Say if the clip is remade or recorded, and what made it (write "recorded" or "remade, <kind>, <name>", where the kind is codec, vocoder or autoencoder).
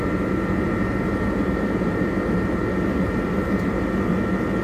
remade, vocoder, BigVGAN v2